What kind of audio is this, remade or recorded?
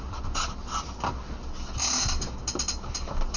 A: recorded